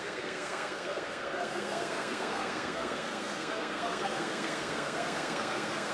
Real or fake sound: fake